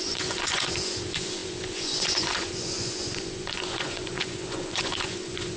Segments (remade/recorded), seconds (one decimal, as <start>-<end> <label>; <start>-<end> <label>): 0.0-5.6 remade